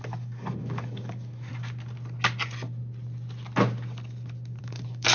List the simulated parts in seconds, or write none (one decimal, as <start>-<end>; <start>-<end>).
0.0-1.5; 4.6-5.1